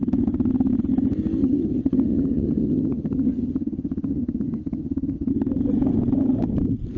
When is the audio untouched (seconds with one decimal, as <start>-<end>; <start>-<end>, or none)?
0.0-1.4; 5.3-7.0